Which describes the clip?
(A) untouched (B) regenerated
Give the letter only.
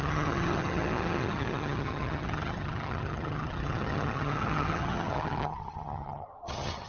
B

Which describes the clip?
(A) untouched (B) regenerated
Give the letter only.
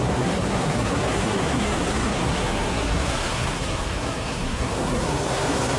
B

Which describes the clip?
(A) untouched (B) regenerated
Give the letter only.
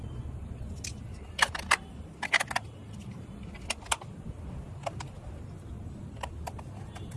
A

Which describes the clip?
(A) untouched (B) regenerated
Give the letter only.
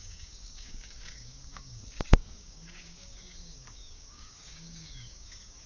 B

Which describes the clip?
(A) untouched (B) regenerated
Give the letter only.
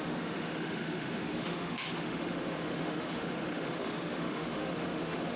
B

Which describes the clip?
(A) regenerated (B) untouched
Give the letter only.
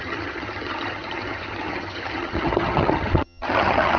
A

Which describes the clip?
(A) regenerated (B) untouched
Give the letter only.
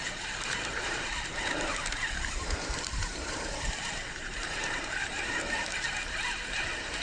A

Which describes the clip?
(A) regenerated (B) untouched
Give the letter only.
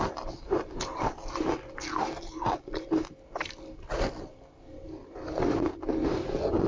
B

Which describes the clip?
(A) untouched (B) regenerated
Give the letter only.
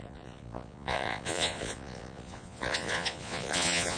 B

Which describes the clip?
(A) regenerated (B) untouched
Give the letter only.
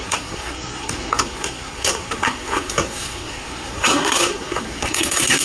A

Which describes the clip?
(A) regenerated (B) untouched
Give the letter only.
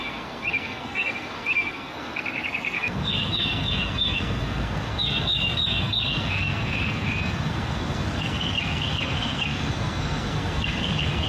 A